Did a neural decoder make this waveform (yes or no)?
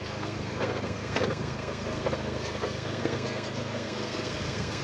yes